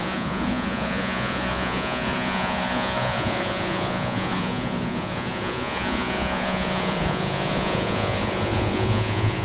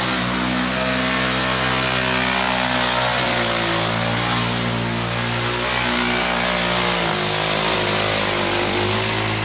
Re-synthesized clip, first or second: first